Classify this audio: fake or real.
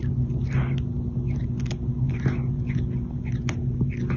real